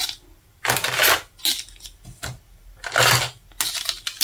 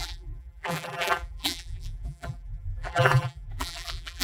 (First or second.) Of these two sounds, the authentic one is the first